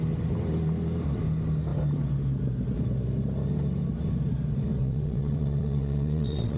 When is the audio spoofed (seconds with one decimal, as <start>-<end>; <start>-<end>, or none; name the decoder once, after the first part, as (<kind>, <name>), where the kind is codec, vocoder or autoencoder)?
4.8-6.6 (vocoder, WaveNeXt)